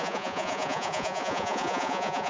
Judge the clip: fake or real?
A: fake